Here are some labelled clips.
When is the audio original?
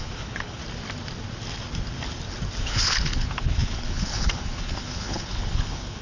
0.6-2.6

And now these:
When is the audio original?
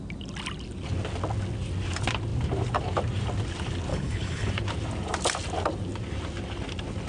0.0-3.9; 4.5-7.1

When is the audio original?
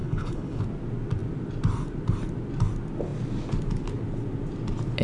0.6-5.0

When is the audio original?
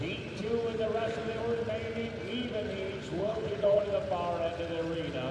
0.0-3.0; 3.8-5.3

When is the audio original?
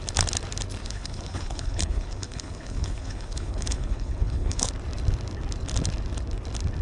0.0-0.8; 4.7-6.8